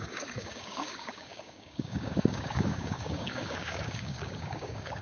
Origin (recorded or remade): remade